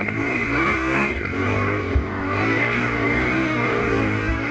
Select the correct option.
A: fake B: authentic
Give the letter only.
A